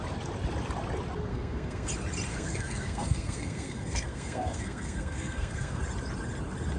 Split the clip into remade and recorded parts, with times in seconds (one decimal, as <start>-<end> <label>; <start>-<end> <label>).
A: 0.0-1.3 recorded; 1.3-1.9 remade; 1.9-2.3 recorded; 2.3-5.8 remade; 5.8-6.8 recorded